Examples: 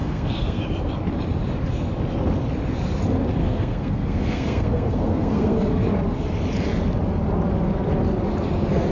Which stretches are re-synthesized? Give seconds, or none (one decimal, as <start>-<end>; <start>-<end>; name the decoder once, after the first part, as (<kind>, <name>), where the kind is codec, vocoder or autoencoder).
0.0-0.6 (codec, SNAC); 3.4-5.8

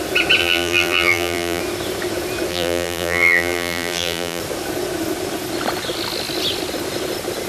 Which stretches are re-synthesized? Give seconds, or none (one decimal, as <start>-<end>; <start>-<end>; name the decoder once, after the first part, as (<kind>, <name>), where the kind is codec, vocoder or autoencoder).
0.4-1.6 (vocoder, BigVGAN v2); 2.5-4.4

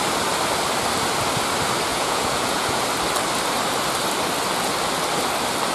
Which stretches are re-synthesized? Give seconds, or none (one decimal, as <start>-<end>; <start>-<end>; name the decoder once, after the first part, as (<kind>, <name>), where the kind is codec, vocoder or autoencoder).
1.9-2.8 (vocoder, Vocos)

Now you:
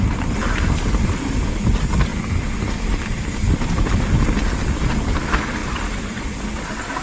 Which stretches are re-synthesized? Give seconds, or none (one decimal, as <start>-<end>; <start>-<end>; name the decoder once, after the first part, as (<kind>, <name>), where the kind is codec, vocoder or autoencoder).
2.1-3.2 (vocoder, BigVGAN v2); 5.6-6.3

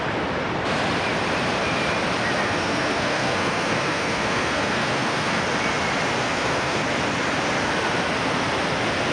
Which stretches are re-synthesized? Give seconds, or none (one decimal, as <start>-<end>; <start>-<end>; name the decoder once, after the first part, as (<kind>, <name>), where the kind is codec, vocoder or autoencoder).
2.4-5.4 (codec, SNAC); 6.2-6.8